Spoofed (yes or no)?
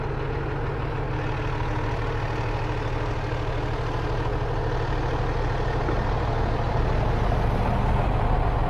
no